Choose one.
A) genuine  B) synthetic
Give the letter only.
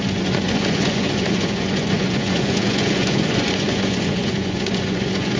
B